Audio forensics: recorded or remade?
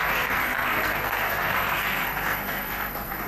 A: remade